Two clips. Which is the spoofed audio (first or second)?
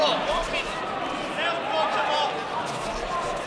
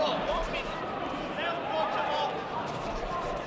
second